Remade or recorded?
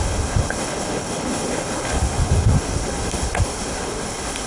remade